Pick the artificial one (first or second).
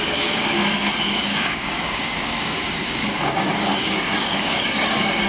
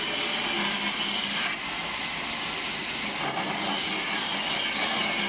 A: first